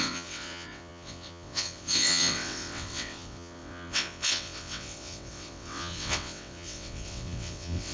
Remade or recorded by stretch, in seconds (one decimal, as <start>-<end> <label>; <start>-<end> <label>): 0.0-7.9 remade